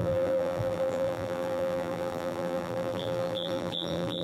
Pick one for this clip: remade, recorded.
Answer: remade